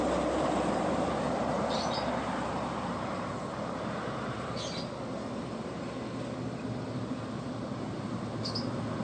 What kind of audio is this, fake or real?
real